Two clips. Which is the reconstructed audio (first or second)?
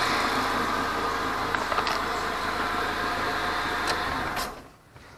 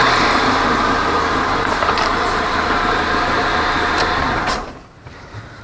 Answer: second